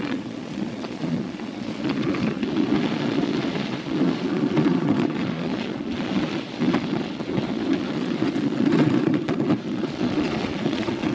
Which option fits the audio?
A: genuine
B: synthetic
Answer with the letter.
B